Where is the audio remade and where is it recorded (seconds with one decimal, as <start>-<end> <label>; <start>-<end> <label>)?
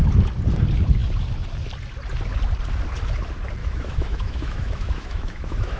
0.0-3.6 recorded; 3.6-5.8 remade